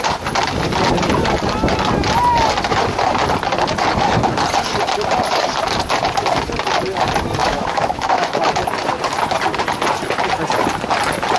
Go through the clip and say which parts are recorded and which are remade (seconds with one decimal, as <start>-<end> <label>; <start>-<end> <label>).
0.0-7.4 recorded; 7.4-8.5 remade; 8.5-11.4 recorded